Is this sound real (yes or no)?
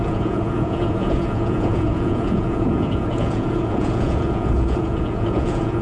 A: no